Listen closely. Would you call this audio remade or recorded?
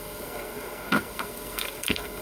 remade